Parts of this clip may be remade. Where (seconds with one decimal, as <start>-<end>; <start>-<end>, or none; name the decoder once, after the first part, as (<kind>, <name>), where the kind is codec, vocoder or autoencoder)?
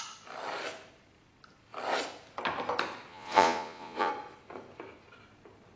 3.1-4.1 (vocoder, Vocos)